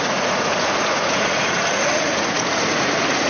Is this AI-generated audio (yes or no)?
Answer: yes